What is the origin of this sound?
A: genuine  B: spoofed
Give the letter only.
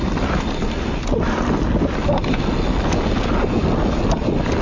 A